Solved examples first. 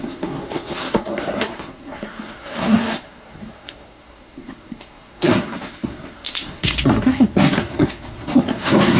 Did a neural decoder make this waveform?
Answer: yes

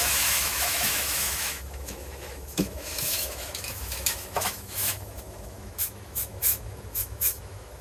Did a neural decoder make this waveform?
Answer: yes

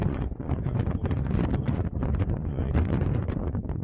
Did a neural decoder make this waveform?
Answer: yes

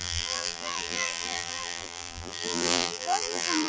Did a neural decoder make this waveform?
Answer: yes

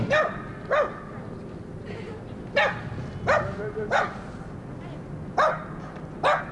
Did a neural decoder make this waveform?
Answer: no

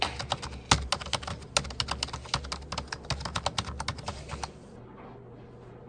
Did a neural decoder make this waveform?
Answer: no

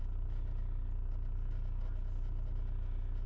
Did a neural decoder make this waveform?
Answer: no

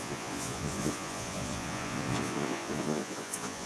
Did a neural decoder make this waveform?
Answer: yes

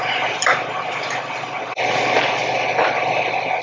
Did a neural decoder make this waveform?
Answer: no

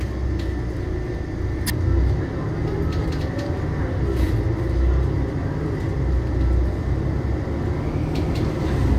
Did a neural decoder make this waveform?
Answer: no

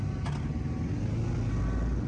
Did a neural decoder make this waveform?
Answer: no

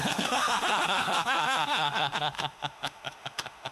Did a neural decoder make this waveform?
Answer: yes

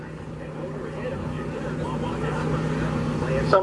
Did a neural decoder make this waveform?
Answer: no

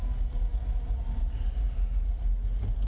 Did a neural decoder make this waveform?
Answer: no